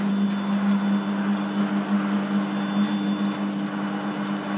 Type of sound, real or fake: real